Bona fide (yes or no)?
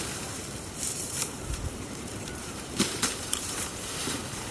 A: no